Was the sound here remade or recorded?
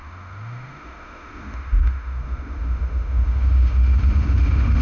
remade